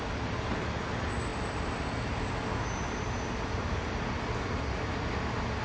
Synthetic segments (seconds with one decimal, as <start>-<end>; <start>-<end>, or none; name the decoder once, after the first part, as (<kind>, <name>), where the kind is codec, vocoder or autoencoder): none